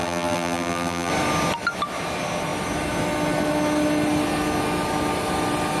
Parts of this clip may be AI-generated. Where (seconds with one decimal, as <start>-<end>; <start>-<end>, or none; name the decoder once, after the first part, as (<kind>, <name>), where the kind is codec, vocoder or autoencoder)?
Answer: 0.0-1.1 (vocoder, BigVGAN v2)